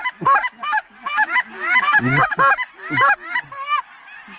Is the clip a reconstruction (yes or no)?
no